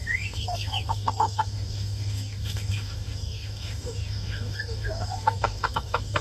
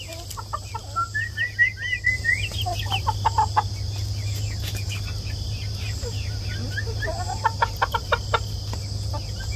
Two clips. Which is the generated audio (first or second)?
first